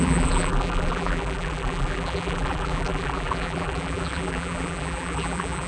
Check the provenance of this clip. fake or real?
fake